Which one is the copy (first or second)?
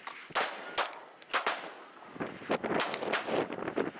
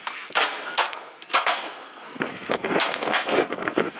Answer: second